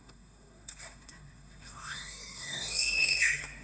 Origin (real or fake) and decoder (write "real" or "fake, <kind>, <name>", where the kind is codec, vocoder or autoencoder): fake, codec, SNAC